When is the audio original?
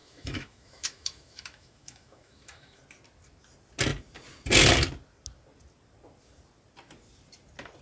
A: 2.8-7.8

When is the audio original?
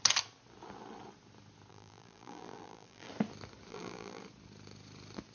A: 0.0-1.7; 3.1-3.7; 4.2-5.3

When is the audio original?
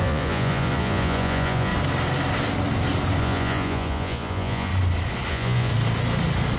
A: 1.7-3.2; 4.7-5.3; 5.7-6.6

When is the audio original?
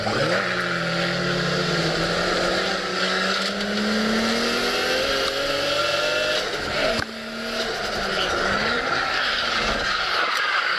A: 0.0-2.9; 3.5-8.1